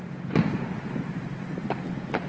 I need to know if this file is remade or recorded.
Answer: recorded